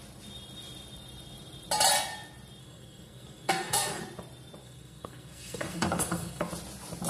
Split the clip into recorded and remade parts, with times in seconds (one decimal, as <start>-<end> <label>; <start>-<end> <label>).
0.0-2.6 recorded; 2.6-4.0 remade; 4.0-4.6 recorded; 4.6-6.5 remade; 6.5-7.1 recorded